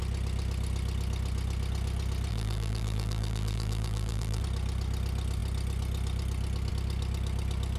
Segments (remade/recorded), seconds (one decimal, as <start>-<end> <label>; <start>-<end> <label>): 0.0-2.3 recorded; 2.3-4.4 remade; 4.4-7.8 recorded

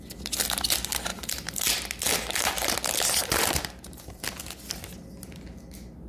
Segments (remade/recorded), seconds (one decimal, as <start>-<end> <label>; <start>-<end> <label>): 0.0-1.1 recorded; 1.1-1.6 remade; 1.6-3.2 recorded; 3.2-4.4 remade; 4.4-6.1 recorded